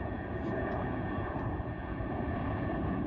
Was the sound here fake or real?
fake